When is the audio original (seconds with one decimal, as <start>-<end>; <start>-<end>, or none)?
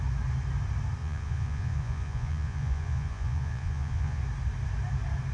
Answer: 0.0-1.0; 4.2-5.3